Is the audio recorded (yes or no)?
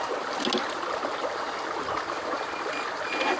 yes